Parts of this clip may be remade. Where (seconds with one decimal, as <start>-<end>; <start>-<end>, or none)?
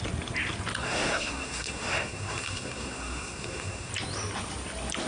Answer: 0.8-3.9